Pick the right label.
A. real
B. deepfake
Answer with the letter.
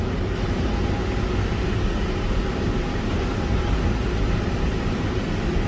A